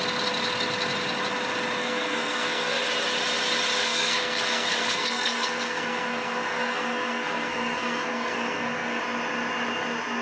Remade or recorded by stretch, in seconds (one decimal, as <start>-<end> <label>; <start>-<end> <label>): 0.0-1.8 recorded; 1.8-2.8 remade; 2.8-3.8 recorded; 3.8-9.0 remade; 9.0-10.2 recorded